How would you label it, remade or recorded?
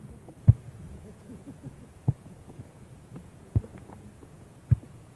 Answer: remade